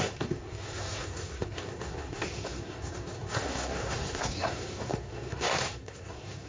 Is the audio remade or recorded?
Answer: remade